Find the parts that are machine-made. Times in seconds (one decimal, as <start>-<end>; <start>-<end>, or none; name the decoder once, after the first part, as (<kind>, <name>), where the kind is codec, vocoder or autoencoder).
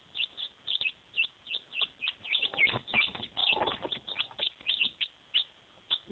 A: none